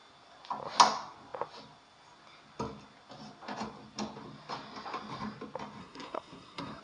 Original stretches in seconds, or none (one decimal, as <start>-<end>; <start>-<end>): 0.0-5.8